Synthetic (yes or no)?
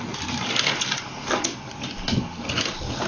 no